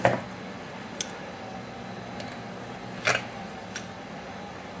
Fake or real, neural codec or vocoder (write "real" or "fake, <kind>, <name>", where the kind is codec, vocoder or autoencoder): real